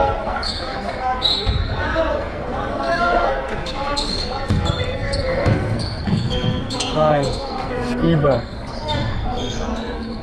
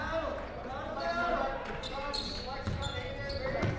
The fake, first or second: first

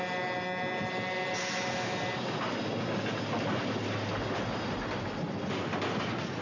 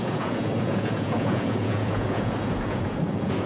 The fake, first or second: second